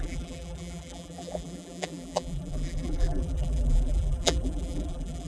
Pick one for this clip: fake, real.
fake